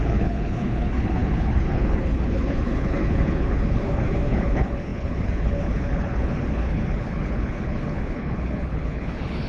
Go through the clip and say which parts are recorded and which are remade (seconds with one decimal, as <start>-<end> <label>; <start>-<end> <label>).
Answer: 0.0-9.5 remade